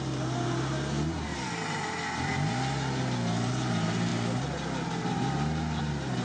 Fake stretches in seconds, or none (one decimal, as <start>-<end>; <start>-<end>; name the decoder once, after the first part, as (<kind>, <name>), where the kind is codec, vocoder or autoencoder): none